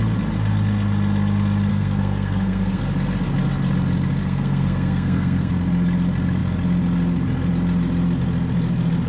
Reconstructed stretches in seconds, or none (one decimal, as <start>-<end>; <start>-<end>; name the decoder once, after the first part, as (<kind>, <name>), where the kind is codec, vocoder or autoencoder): 1.7-2.8 (codec, SNAC); 4.2-5.5